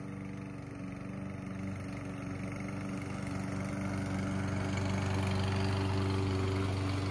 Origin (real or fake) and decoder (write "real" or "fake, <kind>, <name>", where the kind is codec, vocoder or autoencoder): real